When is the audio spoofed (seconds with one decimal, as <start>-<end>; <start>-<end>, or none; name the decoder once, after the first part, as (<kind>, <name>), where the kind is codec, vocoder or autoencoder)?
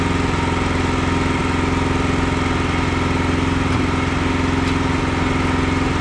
none